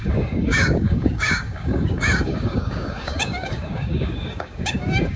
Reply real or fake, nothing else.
fake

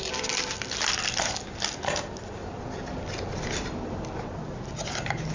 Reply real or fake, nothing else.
real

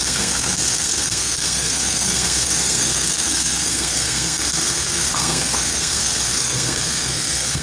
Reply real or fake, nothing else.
fake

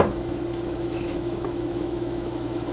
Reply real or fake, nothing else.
fake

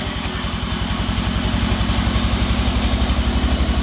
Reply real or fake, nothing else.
real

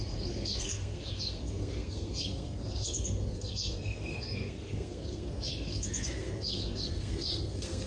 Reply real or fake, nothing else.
fake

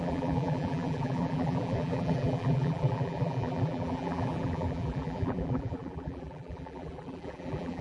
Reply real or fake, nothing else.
fake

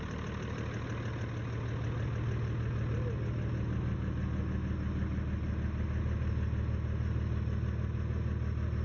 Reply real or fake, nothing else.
real